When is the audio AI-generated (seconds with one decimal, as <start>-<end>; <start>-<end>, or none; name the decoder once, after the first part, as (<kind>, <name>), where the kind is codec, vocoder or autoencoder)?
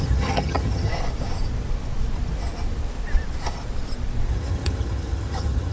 0.0-0.9 (vocoder, HiFi-GAN); 4.3-5.7